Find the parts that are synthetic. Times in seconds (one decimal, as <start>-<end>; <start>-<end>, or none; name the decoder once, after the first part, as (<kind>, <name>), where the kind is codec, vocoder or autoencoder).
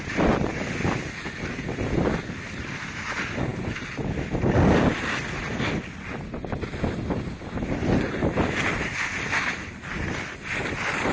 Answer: none